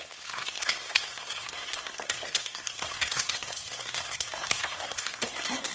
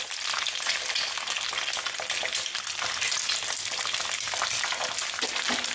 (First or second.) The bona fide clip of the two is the second